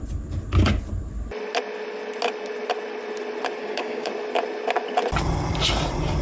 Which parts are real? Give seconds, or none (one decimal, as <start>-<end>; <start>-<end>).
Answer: 0.0-3.6; 4.1-6.2